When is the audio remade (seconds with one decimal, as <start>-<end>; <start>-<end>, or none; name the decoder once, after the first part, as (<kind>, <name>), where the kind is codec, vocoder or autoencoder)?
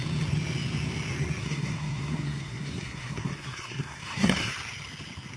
1.4-4.5 (codec, SNAC)